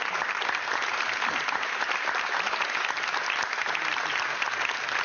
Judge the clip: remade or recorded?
recorded